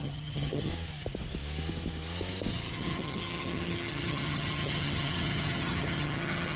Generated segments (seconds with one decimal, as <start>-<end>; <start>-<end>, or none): 0.0-0.7; 2.5-6.6